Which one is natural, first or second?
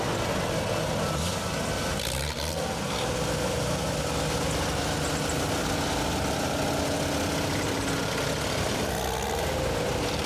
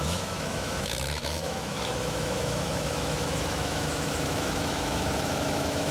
first